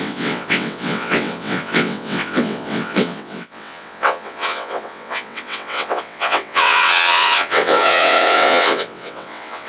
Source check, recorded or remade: remade